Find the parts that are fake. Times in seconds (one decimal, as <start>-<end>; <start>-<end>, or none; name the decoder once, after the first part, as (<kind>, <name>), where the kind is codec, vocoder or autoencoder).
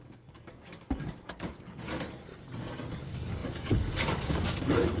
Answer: 0.0-2.3 (codec, DAC); 2.9-5.0